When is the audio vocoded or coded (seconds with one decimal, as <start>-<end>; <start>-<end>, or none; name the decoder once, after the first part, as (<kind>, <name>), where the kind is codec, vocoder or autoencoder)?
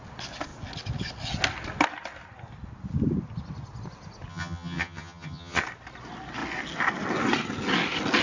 4.3-5.6 (vocoder, HiFi-GAN)